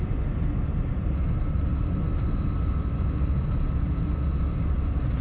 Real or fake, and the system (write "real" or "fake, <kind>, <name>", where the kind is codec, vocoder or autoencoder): real